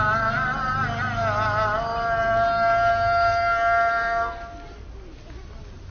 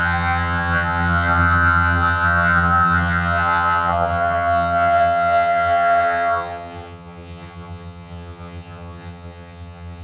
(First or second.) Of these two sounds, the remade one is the second